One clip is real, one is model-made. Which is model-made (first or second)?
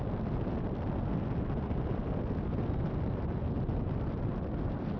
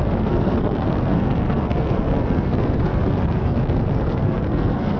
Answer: second